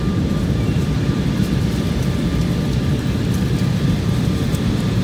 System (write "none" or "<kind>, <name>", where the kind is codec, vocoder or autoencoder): vocoder, BigVGAN v2